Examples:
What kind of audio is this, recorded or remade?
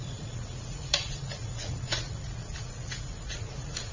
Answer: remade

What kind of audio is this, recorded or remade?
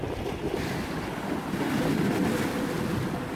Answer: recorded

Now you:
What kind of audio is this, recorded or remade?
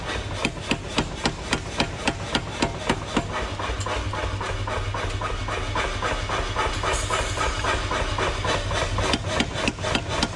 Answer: recorded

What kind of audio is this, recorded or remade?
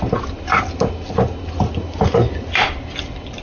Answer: recorded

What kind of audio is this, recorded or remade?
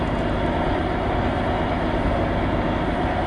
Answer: recorded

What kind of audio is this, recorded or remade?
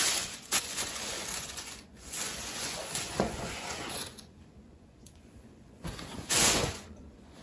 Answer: remade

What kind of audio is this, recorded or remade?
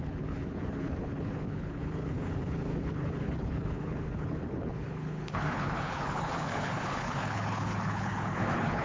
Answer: remade